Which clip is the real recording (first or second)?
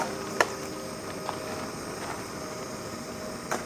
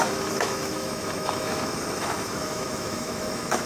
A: first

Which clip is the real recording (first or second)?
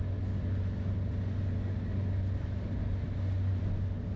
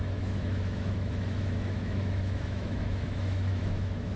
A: first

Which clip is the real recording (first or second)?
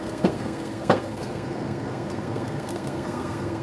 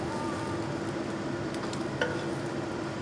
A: second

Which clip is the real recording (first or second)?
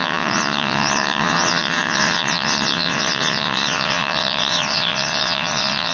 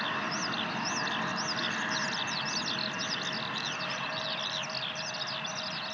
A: second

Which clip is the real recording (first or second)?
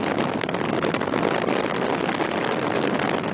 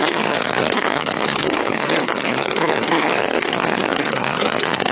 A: first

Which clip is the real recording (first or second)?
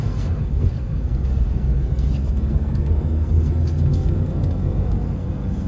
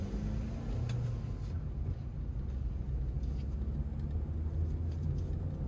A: second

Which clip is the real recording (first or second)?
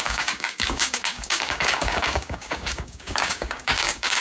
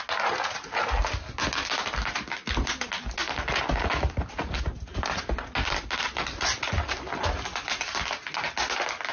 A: second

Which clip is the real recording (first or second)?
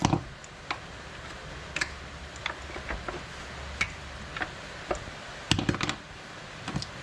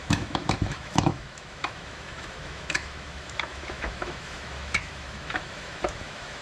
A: first